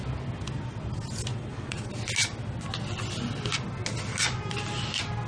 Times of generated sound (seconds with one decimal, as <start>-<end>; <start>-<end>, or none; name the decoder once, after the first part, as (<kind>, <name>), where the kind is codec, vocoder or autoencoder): 1.3-1.9 (vocoder, WaveNeXt)